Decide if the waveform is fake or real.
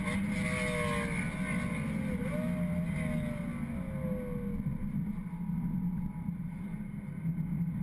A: real